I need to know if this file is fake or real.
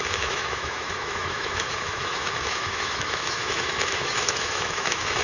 fake